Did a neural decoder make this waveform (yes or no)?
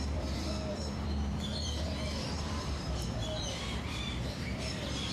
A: yes